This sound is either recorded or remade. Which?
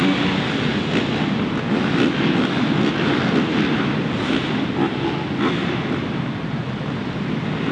recorded